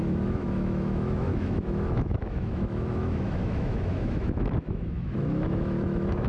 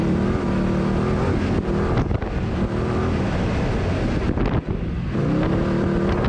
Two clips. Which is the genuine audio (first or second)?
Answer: second